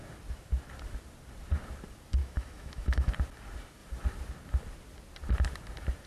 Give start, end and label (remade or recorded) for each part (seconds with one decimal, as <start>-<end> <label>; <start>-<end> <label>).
0.0-2.2 recorded; 2.2-3.1 remade; 3.1-6.1 recorded